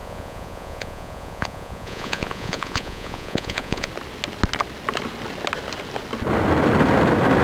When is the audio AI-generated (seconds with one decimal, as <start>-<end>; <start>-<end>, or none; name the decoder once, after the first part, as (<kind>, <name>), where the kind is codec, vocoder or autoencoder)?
0.0-3.9 (vocoder, Vocos)